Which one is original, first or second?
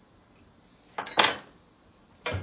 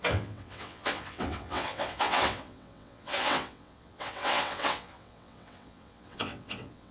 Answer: first